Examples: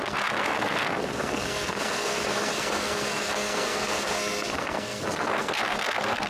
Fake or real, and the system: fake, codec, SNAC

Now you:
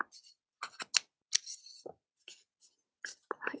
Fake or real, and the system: real